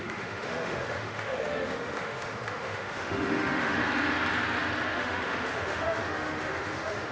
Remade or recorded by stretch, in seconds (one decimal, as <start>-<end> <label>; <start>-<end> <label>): 0.0-3.8 remade; 3.8-4.9 recorded; 4.9-7.1 remade